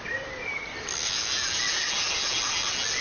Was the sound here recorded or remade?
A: recorded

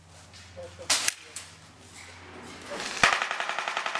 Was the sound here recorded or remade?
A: recorded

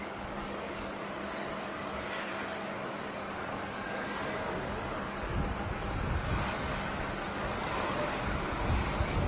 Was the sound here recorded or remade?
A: remade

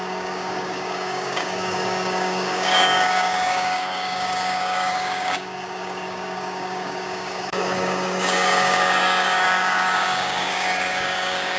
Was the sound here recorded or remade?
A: remade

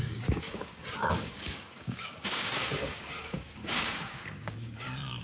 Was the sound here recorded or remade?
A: remade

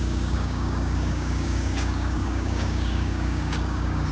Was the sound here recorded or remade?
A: remade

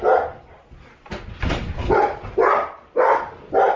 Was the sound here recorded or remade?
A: recorded